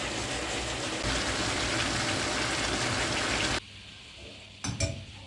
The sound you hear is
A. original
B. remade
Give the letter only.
A